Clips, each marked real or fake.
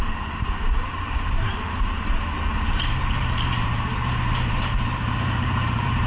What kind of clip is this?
fake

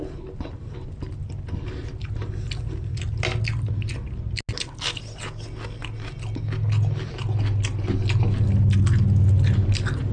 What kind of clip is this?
real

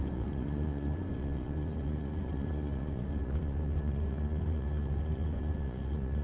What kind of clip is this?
fake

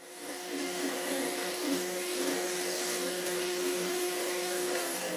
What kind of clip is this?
fake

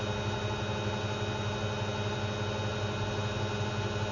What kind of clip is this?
real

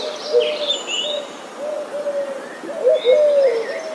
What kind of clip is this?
real